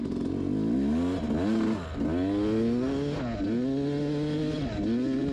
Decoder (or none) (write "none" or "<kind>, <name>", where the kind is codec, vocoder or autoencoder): none